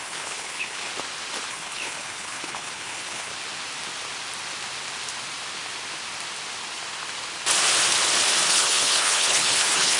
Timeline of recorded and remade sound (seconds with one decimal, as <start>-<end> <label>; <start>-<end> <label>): 0.0-0.9 remade; 0.9-1.5 recorded; 1.5-3.3 remade; 3.3-8.5 recorded; 8.5-10.0 remade